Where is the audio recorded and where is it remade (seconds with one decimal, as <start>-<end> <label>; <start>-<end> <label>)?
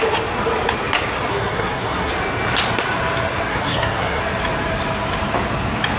0.0-1.3 recorded; 1.3-2.1 remade; 2.1-3.5 recorded; 3.5-4.2 remade; 4.2-6.0 recorded